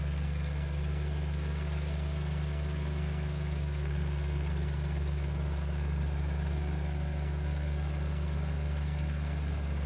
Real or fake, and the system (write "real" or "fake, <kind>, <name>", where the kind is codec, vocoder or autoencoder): fake, codec, SNAC